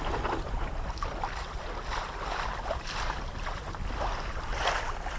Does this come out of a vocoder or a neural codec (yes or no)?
no